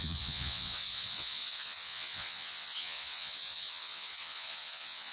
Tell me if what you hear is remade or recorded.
remade